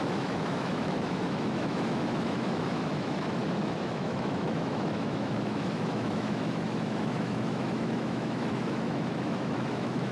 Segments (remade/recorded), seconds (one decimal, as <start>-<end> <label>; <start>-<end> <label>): 0.0-10.1 remade